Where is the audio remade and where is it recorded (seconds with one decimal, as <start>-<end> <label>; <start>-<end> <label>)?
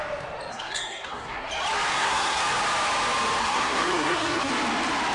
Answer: 0.0-0.5 recorded; 0.5-1.5 remade; 1.5-1.9 recorded; 1.9-2.4 remade; 2.4-3.4 recorded; 3.4-4.5 remade; 4.5-5.1 recorded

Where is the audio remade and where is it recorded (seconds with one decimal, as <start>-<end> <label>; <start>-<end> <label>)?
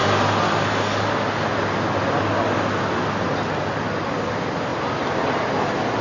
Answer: 0.0-6.0 recorded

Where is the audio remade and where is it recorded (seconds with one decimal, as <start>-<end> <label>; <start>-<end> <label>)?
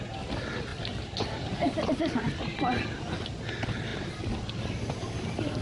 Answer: 0.0-5.6 recorded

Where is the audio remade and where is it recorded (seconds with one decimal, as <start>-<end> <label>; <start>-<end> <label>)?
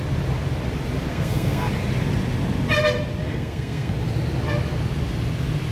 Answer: 0.0-1.1 recorded; 1.1-1.7 remade; 1.7-3.2 recorded; 3.2-3.9 remade; 3.9-5.7 recorded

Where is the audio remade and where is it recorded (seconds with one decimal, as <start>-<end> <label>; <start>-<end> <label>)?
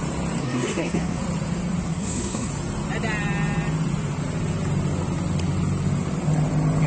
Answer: 0.0-0.4 recorded; 0.4-1.2 remade; 1.2-1.9 recorded; 1.9-2.5 remade; 2.5-6.9 recorded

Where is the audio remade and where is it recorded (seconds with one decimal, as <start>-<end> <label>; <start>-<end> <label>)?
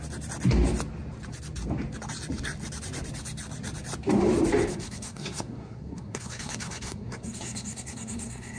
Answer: 0.0-4.7 recorded; 4.7-8.6 remade